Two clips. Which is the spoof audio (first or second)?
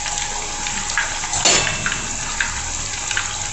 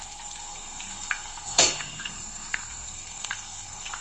second